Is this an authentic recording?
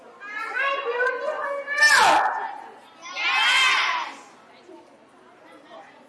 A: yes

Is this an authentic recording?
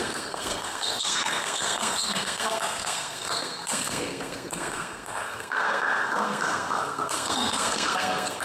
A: no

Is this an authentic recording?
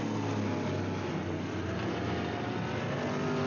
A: yes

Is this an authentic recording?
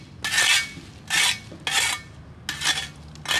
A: yes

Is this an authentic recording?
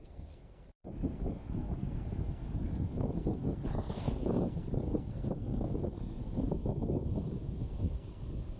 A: no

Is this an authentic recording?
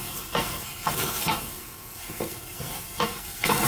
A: no